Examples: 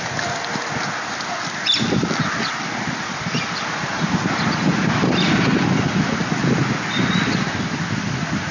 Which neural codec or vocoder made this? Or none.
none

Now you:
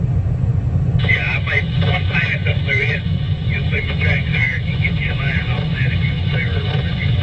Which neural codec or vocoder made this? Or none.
vocoder, Vocos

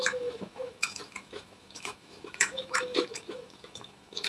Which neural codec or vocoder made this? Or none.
autoencoder, DAC-VAE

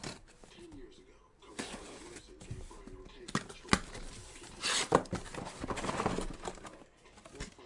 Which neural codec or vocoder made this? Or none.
none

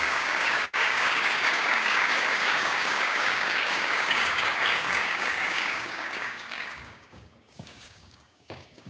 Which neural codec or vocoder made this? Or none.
codec, DAC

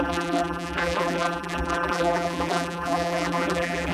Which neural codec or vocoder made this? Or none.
vocoder, BigVGAN v2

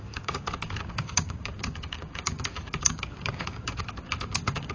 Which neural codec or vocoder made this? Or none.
codec, DAC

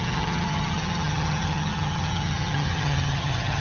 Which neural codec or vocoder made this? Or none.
vocoder, HiFi-GAN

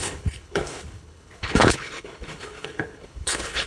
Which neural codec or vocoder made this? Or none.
codec, HILCodec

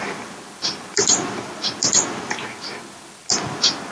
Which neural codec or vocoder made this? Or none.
none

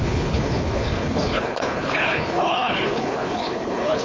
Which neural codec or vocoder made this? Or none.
codec, HILCodec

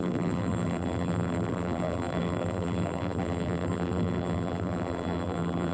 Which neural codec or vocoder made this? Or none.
vocoder, BigVGAN v2